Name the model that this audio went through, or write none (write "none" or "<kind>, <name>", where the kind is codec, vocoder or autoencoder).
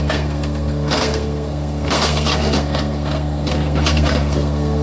codec, SNAC